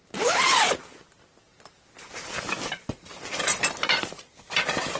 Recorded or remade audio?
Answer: recorded